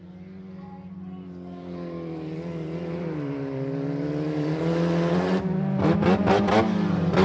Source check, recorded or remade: recorded